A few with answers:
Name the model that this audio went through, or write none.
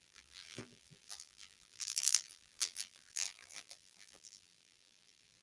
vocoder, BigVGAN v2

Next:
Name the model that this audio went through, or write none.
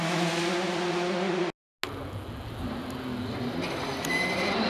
none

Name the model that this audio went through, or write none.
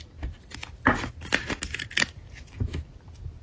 none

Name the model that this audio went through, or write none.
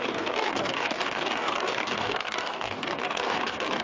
codec, DAC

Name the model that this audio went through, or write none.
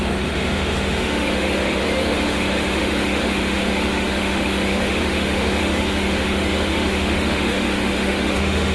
autoencoder, DAC-VAE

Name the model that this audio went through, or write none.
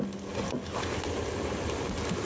none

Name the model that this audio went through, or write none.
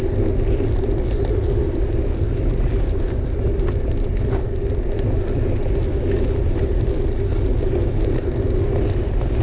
none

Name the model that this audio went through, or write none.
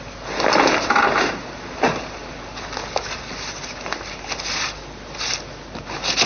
none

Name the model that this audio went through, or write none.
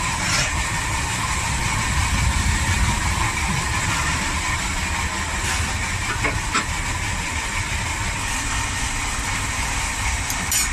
none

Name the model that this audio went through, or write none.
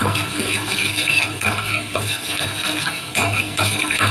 codec, SNAC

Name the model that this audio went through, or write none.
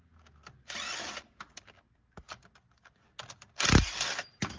none